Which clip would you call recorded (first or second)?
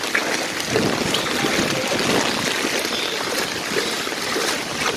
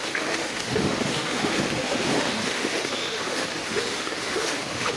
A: first